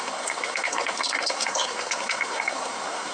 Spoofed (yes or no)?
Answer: yes